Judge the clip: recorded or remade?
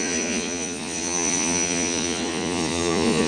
remade